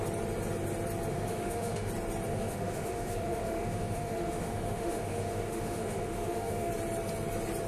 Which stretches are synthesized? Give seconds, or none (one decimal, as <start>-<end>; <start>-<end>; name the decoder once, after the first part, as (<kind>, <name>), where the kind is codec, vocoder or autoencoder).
1.1-1.9 (autoencoder, DAC-VAE); 2.3-6.7